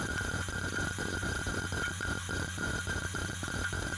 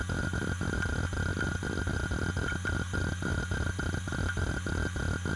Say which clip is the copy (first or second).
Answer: first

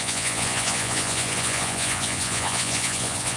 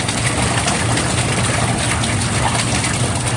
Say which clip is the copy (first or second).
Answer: first